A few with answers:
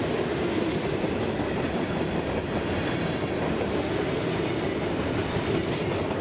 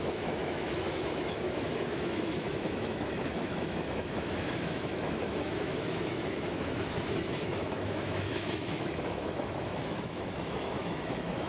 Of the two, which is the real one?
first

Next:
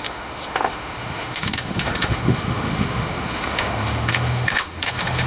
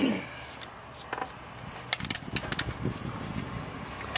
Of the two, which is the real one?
second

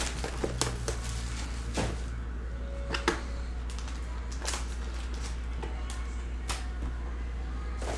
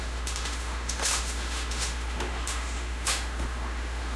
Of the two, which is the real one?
first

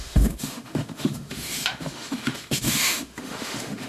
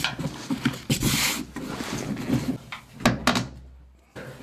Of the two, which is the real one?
second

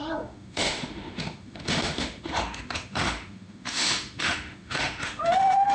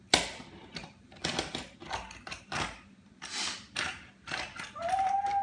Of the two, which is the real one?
second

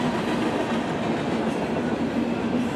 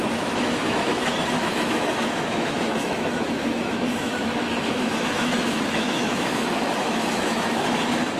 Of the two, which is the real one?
first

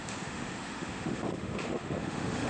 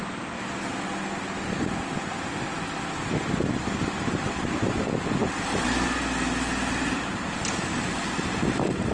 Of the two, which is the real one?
second